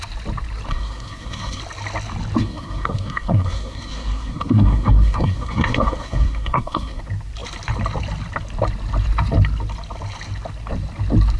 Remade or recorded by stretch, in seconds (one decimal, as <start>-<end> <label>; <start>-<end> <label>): 0.0-0.7 recorded; 0.7-1.6 remade; 1.6-2.4 recorded; 2.4-7.0 remade; 7.0-11.4 recorded